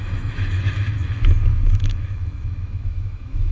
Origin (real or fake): fake